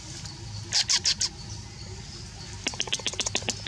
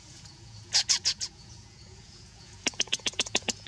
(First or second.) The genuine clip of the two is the first